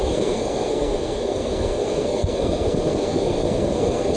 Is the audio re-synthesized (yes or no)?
yes